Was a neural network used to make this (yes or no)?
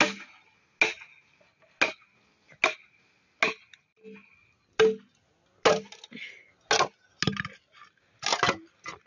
no